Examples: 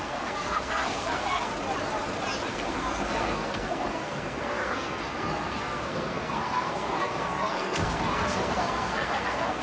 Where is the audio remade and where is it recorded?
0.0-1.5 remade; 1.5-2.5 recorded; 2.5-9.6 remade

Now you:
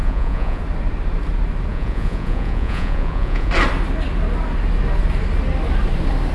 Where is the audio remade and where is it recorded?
0.0-0.6 remade; 0.6-1.7 recorded; 1.7-3.5 remade; 3.5-6.3 recorded

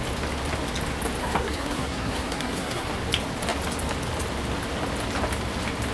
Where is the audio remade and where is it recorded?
0.0-1.2 recorded; 1.2-2.9 remade; 2.9-5.9 recorded

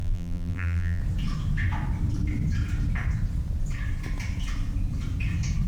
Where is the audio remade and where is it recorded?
0.0-1.0 remade; 1.0-5.7 recorded

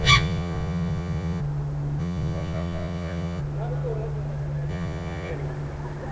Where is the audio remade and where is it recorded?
0.0-1.4 remade; 1.4-2.0 recorded; 2.0-3.4 remade; 3.4-4.7 recorded; 4.7-5.3 remade; 5.3-6.1 recorded